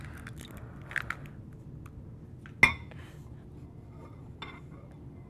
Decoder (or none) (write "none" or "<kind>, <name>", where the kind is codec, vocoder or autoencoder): none